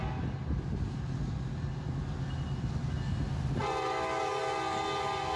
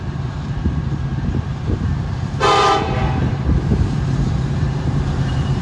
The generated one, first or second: second